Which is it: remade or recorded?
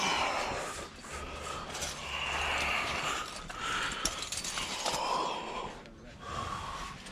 recorded